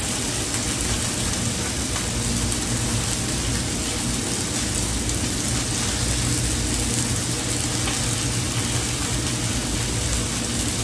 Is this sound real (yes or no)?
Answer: yes